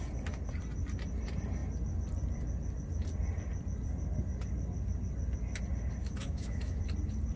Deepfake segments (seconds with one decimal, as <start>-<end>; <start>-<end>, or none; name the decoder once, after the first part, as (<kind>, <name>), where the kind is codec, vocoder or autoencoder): 6.0-6.8 (autoencoder, DAC-VAE)